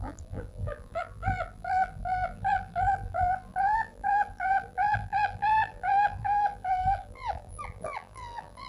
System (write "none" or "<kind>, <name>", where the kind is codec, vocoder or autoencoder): vocoder, BigVGAN v2